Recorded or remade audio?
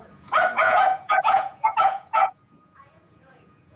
remade